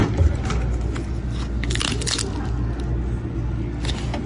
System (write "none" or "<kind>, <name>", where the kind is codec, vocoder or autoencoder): none